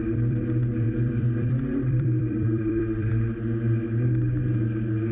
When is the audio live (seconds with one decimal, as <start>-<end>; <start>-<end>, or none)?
3.1-5.1